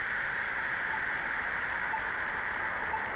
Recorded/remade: recorded